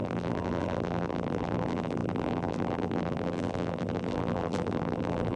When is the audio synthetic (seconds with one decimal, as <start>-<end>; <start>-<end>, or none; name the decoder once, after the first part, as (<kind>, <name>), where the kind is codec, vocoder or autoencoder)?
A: 0.0-5.4 (vocoder, BigVGAN v2)